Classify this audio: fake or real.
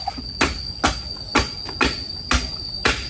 real